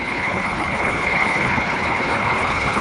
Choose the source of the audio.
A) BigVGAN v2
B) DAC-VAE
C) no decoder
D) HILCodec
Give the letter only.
D